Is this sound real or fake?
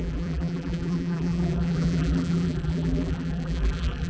fake